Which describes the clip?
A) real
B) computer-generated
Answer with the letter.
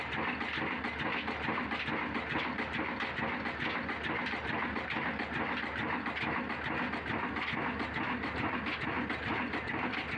A